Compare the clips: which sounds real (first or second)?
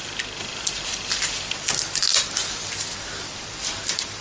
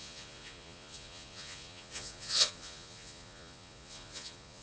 first